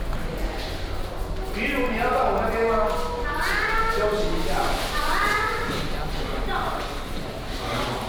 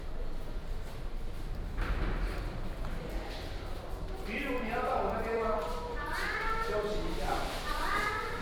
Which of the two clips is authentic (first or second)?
first